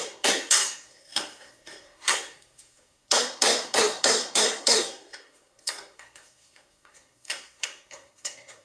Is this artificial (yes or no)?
yes